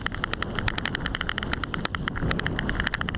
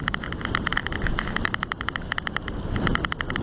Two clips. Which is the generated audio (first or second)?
second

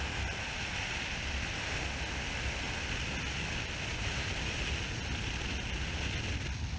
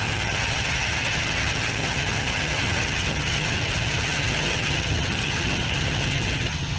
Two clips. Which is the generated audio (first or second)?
second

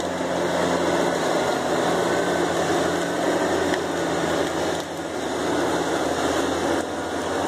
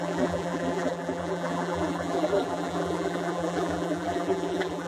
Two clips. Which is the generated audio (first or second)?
second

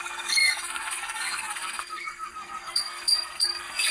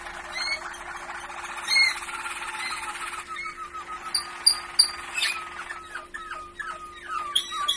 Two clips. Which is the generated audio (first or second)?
first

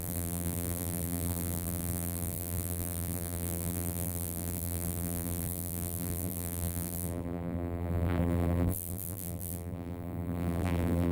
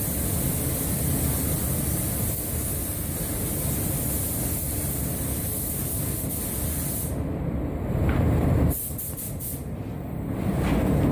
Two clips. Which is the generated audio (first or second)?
first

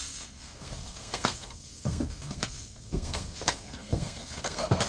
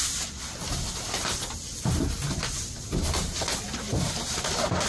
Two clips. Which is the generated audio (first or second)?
first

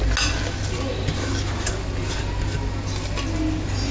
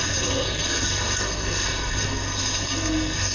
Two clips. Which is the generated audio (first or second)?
second